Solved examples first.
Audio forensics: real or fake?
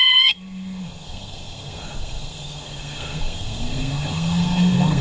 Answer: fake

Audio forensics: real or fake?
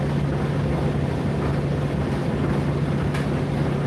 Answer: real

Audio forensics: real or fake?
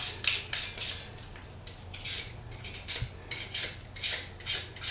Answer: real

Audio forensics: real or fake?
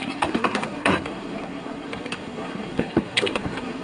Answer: fake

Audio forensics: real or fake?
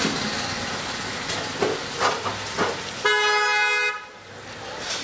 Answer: real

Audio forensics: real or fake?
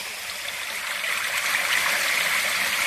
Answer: real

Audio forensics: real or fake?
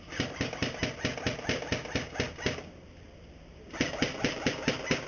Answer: real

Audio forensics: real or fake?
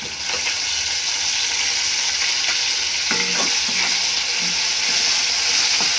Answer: real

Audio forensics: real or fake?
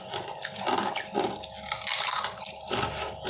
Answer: real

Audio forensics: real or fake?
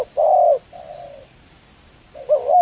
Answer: real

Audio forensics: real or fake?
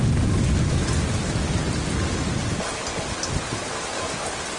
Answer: real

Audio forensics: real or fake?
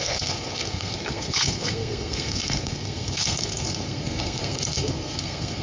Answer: fake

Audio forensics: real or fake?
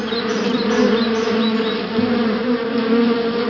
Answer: real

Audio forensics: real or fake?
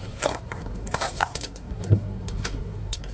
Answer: fake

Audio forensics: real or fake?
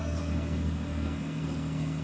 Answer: fake